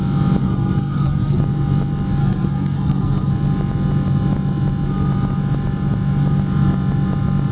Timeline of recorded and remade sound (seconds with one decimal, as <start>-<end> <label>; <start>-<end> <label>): 0.0-0.4 recorded; 0.4-1.4 remade; 1.4-2.2 recorded; 2.2-3.3 remade; 3.3-7.5 recorded